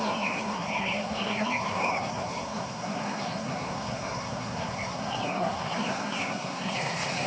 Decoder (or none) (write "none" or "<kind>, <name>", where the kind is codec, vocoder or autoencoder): codec, SNAC